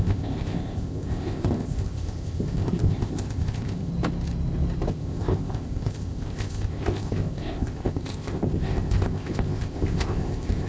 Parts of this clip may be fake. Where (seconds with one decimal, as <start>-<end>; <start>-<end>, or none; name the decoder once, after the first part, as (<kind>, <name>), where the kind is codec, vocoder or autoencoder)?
0.0-3.9 (codec, ZipCodec); 4.9-10.7